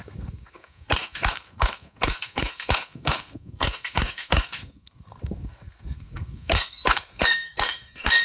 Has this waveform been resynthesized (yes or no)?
yes